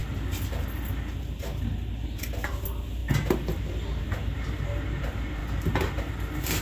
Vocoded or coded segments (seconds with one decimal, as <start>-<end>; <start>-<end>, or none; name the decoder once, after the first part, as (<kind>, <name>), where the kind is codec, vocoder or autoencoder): none